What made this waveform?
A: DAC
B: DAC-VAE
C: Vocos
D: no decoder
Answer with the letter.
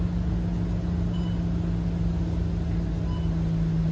D